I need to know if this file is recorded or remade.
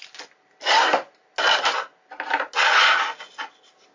recorded